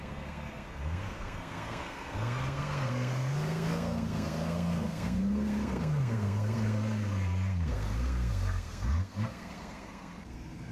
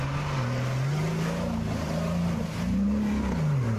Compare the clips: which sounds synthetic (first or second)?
first